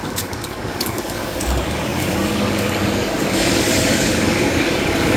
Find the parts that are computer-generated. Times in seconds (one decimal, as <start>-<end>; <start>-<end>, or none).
0.0-5.2